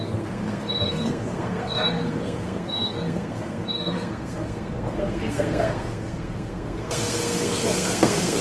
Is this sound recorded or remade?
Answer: remade